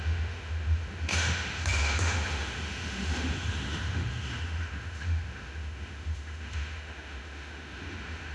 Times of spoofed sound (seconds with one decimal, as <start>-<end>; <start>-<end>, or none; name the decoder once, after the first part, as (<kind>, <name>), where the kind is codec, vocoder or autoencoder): 0.0-8.3 (autoencoder, DAC-VAE)